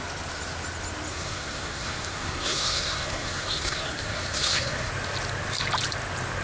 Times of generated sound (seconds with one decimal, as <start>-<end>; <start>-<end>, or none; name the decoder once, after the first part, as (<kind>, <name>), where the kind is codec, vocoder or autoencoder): 1.1-4.9 (codec, SNAC)